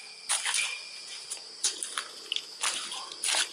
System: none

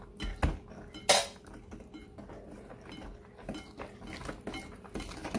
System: none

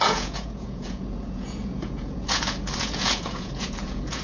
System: vocoder, Vocos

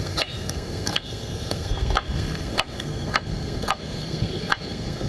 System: codec, SNAC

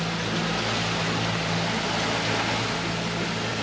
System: none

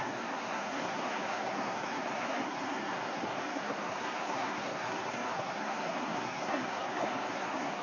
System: codec, SNAC